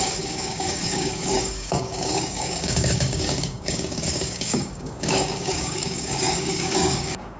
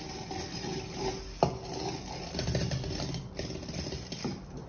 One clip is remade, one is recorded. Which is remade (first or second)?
first